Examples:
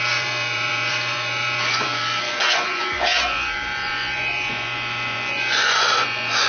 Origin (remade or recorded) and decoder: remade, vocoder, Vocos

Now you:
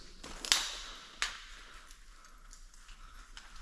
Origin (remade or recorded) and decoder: recorded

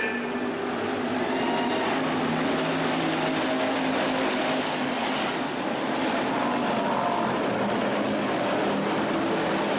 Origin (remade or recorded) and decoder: recorded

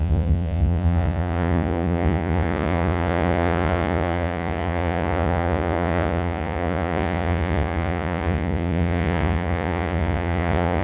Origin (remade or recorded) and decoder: remade, vocoder, Vocos